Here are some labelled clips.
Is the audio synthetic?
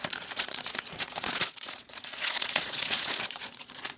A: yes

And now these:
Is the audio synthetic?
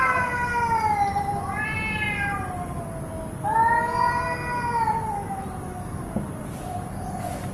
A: no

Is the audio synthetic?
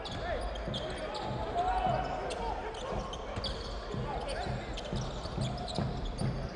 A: no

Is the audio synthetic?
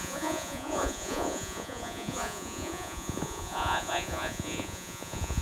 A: yes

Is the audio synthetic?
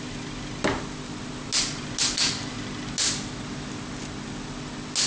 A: no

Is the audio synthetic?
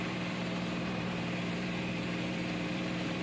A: yes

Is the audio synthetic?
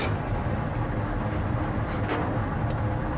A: no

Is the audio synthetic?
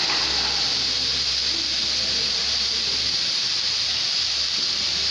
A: no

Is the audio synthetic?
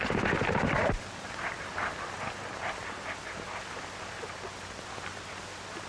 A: no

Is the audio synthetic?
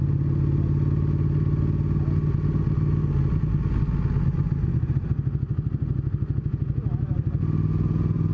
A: no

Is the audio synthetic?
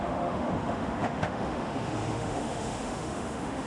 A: yes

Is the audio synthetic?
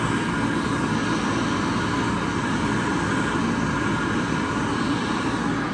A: no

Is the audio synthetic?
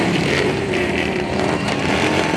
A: yes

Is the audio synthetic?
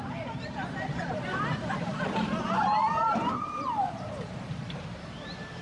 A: yes